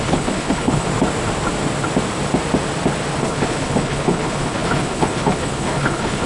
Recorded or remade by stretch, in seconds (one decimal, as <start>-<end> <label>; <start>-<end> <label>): 0.0-0.9 remade; 0.9-3.2 recorded; 3.2-6.3 remade